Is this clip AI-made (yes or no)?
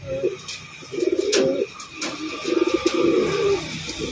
no